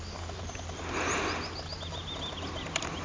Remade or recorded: recorded